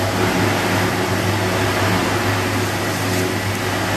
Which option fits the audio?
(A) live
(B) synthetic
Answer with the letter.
A